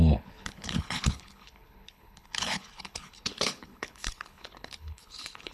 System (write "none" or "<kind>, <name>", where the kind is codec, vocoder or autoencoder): codec, HILCodec